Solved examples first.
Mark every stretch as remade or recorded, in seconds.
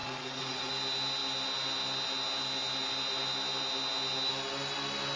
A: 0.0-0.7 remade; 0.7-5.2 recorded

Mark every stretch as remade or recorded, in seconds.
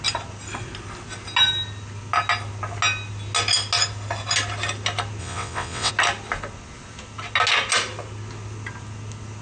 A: 0.0-5.2 recorded; 5.2-5.9 remade; 5.9-9.4 recorded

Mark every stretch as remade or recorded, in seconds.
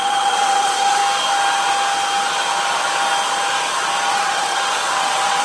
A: 0.0-1.0 remade; 1.0-4.1 recorded; 4.1-5.4 remade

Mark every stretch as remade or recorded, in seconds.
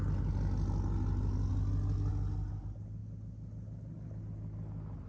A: 0.0-5.1 recorded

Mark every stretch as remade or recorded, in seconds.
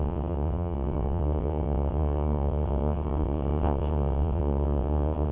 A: 0.0-5.3 remade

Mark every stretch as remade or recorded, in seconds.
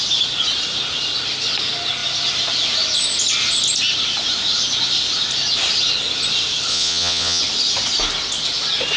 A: 0.0-6.7 recorded; 6.7-7.4 remade; 7.4-9.0 recorded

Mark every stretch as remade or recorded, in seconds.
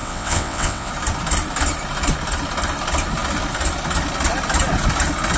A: 0.0-0.9 remade; 0.9-5.4 recorded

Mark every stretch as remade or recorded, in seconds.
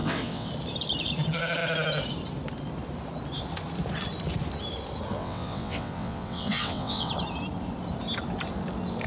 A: 0.0-0.5 remade; 0.5-5.1 recorded; 5.1-7.1 remade; 7.1-9.1 recorded